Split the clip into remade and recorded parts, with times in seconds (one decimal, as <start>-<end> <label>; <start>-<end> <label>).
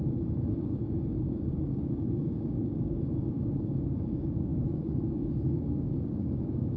0.0-6.8 remade